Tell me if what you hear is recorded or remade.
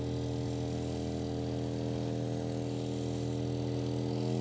recorded